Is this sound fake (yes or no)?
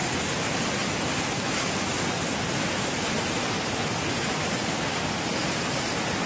no